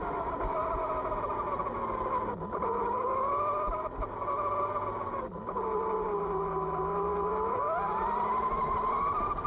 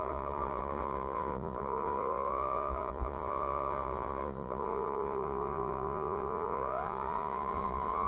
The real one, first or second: first